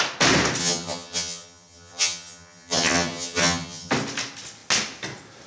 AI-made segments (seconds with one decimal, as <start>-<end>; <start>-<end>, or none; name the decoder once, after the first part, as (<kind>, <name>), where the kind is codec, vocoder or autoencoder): 0.6-3.9 (vocoder, HiFi-GAN)